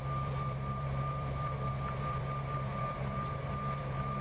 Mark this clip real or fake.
fake